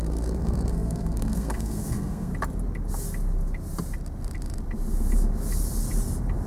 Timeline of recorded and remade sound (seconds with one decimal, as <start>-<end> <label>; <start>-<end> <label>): 0.0-2.3 remade; 2.3-6.5 recorded